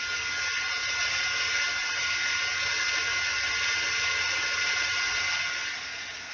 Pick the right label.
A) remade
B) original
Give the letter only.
B